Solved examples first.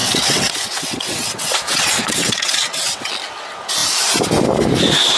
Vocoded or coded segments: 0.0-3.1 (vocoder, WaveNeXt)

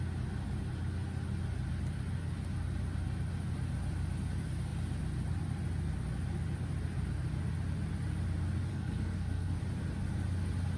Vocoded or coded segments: 8.7-9.6 (codec, SNAC)

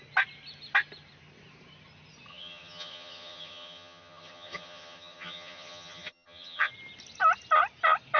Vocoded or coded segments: 2.3-6.7 (vocoder, HiFi-GAN)

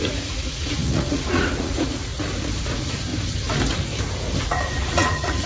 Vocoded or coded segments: 0.0-2.1 (vocoder, Vocos); 2.6-3.1; 4.4-5.5

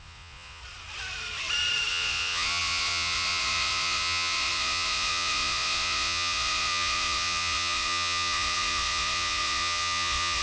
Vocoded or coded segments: 0.0-0.6 (vocoder, Vocos); 1.9-10.4

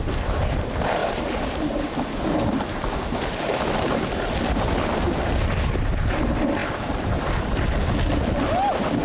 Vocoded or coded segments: none

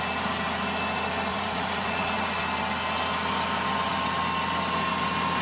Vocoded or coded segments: 1.3-2.4 (vocoder, Vocos)

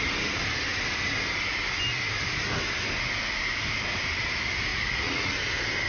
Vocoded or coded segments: 4.7-5.3 (vocoder, Vocos)